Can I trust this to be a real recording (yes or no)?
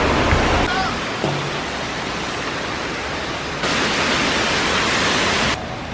yes